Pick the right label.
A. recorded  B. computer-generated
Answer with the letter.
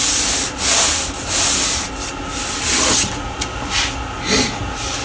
A